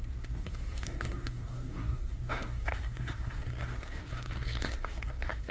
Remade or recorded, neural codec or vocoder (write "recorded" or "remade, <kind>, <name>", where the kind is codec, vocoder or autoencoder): remade, codec, SNAC